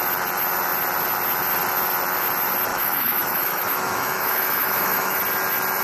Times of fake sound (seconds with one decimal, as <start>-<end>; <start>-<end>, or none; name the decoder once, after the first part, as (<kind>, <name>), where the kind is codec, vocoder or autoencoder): 2.7-5.2 (autoencoder, DAC-VAE)